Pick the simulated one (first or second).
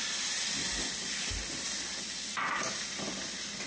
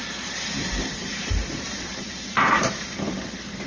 second